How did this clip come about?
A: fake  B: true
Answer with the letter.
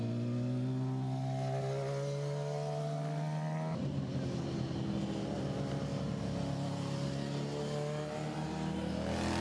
B